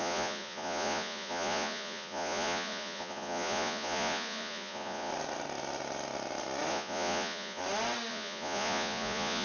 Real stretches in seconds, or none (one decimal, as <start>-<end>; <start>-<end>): 5.1-6.7; 7.6-8.1

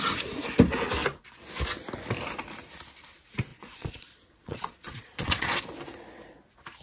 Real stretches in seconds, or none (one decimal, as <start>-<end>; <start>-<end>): 0.0-3.5; 5.6-6.8